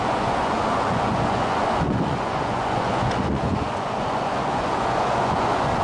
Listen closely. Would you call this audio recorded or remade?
remade